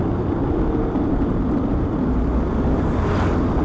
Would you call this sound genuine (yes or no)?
yes